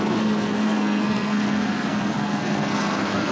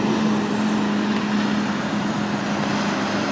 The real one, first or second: second